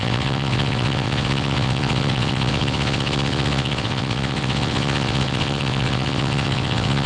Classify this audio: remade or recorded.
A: remade